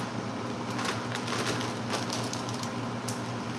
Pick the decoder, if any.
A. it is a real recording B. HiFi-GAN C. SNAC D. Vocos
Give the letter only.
A